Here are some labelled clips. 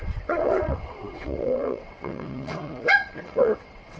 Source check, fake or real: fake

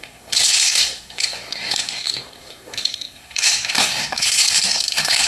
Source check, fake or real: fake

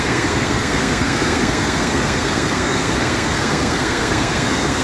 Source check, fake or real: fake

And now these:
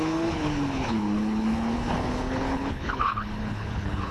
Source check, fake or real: fake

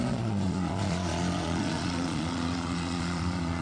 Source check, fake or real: fake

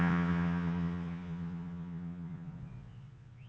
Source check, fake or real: fake